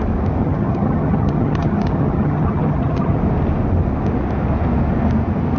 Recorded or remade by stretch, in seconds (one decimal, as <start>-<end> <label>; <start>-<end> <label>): 0.0-0.4 recorded; 0.4-3.2 remade; 3.2-5.6 recorded